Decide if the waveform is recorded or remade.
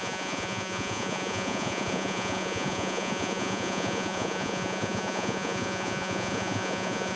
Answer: remade